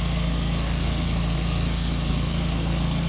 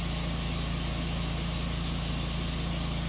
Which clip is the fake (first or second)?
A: first